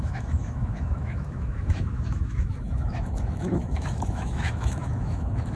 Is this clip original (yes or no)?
no